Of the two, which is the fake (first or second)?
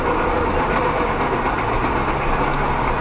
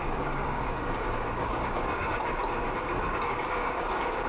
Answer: second